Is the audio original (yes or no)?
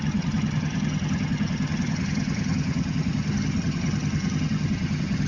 no